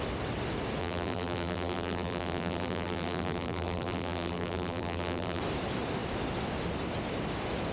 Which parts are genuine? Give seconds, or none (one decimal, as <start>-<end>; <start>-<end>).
0.0-0.8; 5.4-7.7